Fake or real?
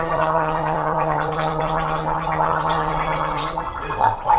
fake